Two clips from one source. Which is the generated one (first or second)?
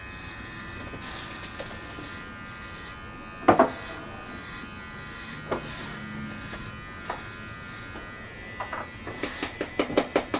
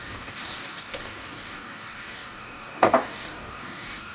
second